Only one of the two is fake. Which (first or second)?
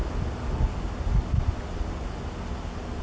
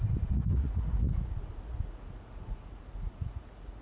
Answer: second